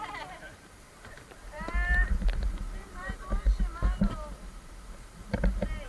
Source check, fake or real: fake